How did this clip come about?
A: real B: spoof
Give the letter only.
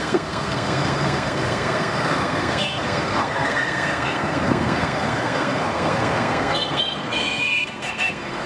B